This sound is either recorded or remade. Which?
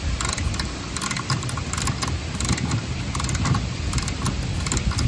recorded